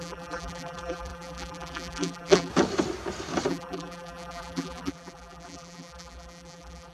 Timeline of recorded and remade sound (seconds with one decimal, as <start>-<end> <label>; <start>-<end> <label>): 0.0-2.5 remade; 2.5-3.5 recorded; 3.5-6.9 remade